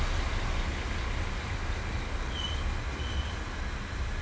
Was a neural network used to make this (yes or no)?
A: no